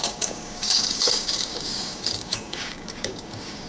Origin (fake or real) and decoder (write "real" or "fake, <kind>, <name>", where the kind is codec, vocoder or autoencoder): fake, codec, DAC